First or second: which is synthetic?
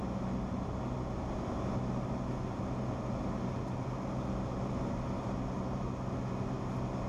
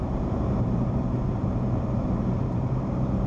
second